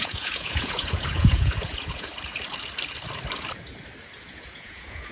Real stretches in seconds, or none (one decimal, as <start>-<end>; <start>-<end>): 2.1-4.3